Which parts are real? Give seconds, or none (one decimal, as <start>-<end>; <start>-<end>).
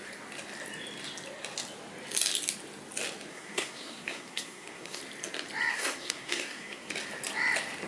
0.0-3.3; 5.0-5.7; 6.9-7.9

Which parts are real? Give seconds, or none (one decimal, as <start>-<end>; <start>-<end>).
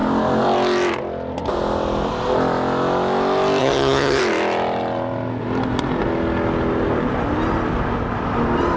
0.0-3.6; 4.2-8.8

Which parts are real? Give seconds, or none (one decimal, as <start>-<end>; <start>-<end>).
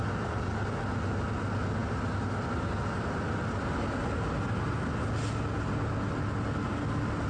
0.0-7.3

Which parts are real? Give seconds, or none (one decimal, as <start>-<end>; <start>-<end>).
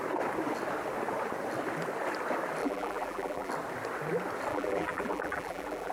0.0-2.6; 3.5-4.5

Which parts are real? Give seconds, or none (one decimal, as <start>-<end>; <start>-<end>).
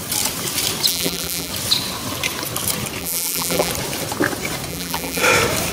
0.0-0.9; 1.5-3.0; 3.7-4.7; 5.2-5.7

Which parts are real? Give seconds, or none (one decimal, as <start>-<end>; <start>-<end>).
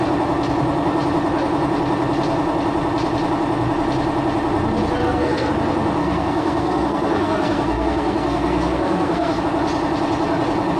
0.0-5.0; 5.5-6.0; 9.4-10.8